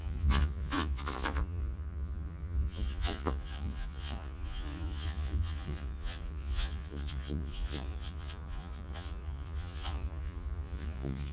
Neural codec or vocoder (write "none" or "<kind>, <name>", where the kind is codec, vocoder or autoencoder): vocoder, Vocos